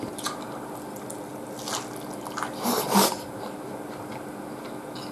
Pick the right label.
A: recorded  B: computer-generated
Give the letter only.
A